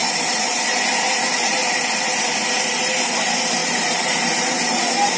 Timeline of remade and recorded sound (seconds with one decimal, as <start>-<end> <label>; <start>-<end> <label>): 0.0-1.7 remade; 1.7-2.4 recorded; 2.4-2.9 remade; 2.9-3.6 recorded; 3.6-4.8 remade; 4.8-5.2 recorded